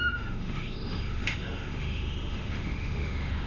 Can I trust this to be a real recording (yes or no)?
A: no